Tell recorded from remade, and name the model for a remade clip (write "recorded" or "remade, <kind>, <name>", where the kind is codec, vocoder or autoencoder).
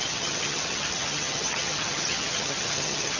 remade, vocoder, HiFi-GAN